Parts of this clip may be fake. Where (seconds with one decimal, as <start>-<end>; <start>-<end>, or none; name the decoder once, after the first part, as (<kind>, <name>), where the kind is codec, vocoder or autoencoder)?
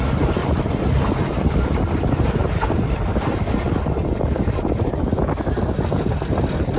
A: 0.4-4.2 (vocoder, BigVGAN v2)